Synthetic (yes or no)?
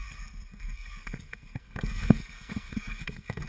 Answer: yes